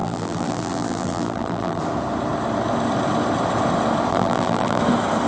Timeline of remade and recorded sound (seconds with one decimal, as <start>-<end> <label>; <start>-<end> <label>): 0.0-1.8 remade; 1.8-4.1 recorded; 4.1-4.8 remade; 4.8-5.3 recorded